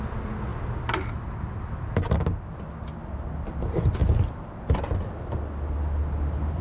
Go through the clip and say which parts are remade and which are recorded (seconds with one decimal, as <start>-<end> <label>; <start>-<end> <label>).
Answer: 0.0-6.6 recorded